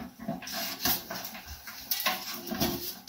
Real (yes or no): yes